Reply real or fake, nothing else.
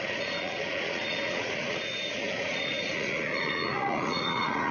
fake